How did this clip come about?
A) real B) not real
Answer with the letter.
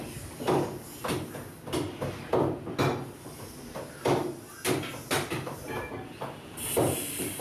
A